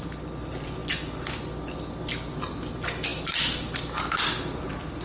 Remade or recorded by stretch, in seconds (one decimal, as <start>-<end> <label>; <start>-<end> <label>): 0.0-5.0 recorded